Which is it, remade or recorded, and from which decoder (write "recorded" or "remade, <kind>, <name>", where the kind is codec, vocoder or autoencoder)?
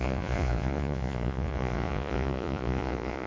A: remade, vocoder, Vocos